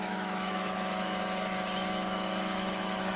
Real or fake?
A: fake